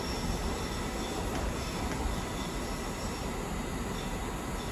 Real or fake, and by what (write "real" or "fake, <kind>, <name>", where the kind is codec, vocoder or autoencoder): real